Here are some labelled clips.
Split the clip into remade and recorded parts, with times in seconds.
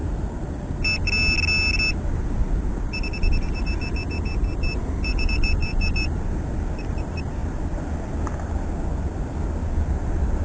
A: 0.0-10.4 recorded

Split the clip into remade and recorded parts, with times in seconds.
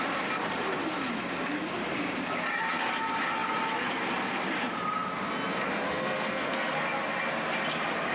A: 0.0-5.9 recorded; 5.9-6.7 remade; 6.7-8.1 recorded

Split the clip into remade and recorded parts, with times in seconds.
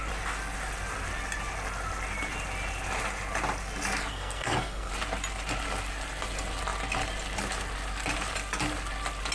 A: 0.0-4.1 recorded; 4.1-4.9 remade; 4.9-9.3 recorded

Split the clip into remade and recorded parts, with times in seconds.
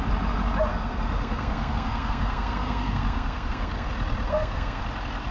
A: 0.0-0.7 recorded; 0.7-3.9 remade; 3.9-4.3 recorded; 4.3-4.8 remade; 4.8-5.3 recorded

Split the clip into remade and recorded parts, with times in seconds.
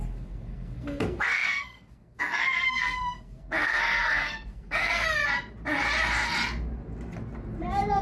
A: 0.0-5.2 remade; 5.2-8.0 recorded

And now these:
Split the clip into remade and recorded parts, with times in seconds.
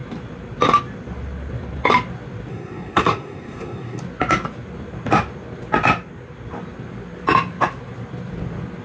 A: 0.0-2.5 recorded; 2.5-4.0 remade; 4.0-8.8 recorded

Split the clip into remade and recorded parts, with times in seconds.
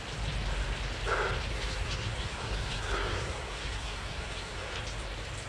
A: 0.0-1.5 recorded; 1.5-4.8 remade; 4.8-5.5 recorded